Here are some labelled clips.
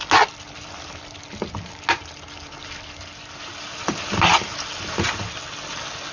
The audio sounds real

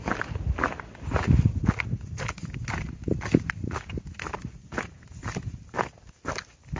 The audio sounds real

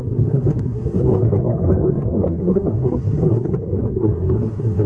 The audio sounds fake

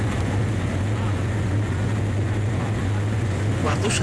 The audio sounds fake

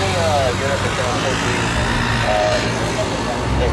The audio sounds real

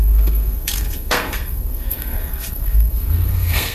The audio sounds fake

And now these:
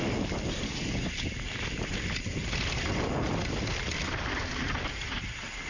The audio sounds real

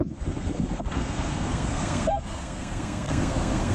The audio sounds fake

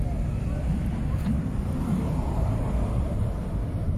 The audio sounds real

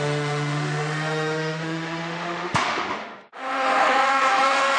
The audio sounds fake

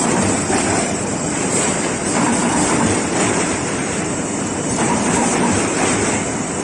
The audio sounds fake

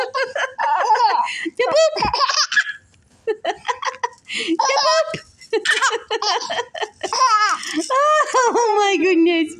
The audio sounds real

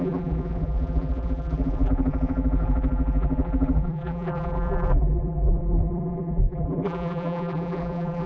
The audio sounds fake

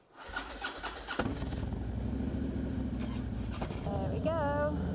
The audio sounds real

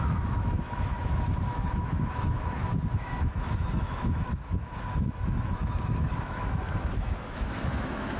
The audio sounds fake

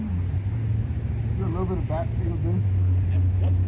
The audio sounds real